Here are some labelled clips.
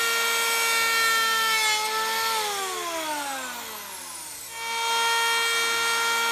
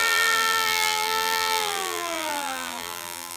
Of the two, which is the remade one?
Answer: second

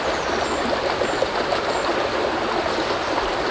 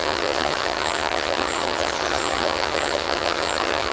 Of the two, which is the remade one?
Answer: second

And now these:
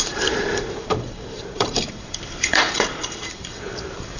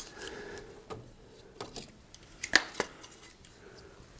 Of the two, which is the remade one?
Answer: first